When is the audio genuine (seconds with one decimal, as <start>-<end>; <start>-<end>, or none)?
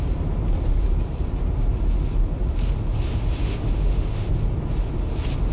0.0-3.1; 4.3-5.5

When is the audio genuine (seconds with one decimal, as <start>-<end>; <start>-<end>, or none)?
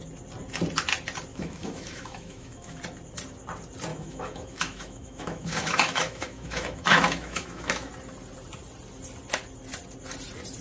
0.0-1.3; 2.8-3.9; 7.9-10.6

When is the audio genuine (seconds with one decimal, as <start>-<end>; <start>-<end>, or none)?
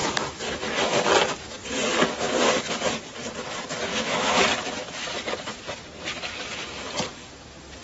1.0-3.9; 4.4-7.8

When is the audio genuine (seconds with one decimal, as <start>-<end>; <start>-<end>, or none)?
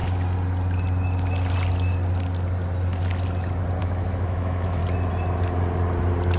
0.0-3.8; 4.8-6.4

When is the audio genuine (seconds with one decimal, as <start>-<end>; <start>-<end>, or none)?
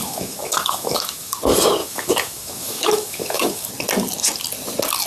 1.3-1.8; 3.7-5.1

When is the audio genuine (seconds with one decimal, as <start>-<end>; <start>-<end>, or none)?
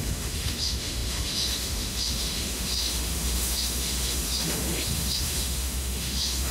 none